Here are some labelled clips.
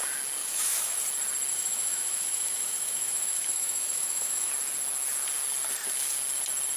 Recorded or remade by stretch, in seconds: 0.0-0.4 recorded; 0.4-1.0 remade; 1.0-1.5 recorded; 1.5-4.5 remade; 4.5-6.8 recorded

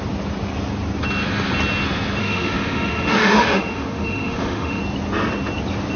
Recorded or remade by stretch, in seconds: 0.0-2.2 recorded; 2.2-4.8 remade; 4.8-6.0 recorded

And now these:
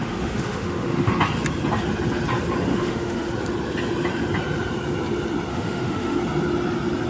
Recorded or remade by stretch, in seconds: 0.0-1.1 remade; 1.1-2.7 recorded; 2.7-3.3 remade; 3.3-5.5 recorded; 5.5-6.2 remade; 6.2-7.1 recorded

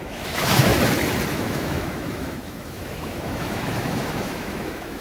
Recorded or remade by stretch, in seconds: 0.0-0.7 remade; 0.7-1.3 recorded; 1.3-5.0 remade